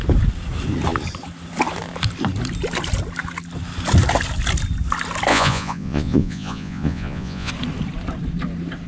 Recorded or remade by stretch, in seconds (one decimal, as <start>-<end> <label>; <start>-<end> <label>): 0.0-5.3 recorded; 5.3-7.5 remade; 7.5-8.9 recorded